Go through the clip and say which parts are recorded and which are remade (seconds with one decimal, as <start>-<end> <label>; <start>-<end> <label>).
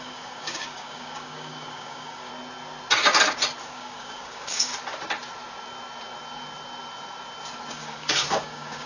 0.0-2.3 remade; 2.3-3.6 recorded; 3.6-4.7 remade; 4.7-7.7 recorded; 7.7-8.9 remade